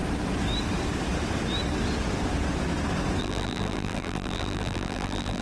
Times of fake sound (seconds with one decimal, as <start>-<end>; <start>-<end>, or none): 3.2-5.4